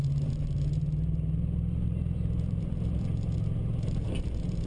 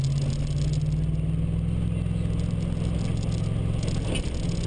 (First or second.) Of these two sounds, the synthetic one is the first